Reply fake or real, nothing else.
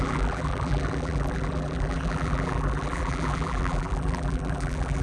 fake